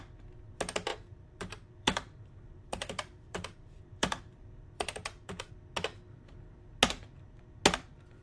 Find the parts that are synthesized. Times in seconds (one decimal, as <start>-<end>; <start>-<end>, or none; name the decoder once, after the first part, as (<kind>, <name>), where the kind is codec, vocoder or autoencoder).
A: 0.9-5.5 (vocoder, BigVGAN v2)